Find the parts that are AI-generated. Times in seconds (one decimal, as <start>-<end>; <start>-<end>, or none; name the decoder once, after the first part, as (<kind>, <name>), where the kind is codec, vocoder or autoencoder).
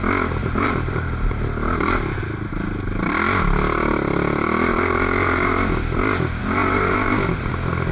0.4-2.2 (vocoder, BigVGAN v2); 4.7-5.7; 6.4-7.5